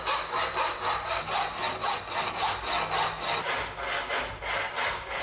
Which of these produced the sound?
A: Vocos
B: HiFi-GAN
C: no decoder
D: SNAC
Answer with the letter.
C